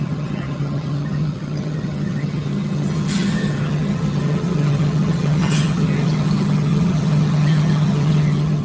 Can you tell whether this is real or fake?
fake